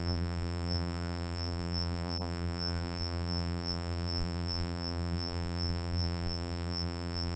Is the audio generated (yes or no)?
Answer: yes